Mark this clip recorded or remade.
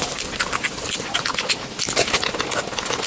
recorded